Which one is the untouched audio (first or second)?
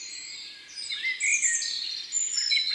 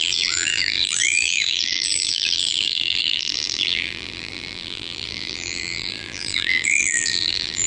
first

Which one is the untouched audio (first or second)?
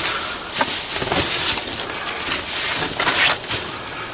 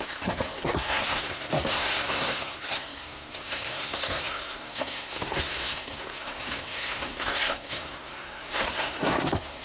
first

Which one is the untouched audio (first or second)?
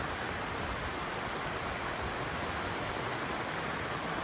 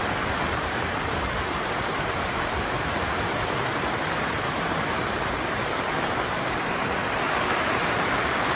first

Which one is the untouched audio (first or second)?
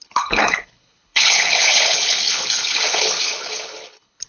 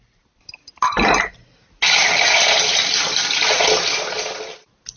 second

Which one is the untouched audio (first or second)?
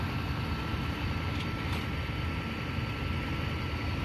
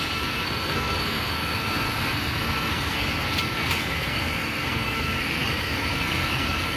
first